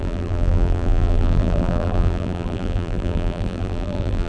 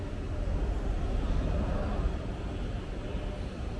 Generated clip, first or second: first